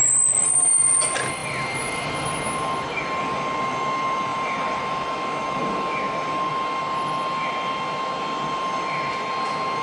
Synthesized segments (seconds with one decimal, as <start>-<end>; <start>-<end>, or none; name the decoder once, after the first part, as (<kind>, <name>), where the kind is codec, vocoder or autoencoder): 4.3-4.8 (vocoder, BigVGAN v2)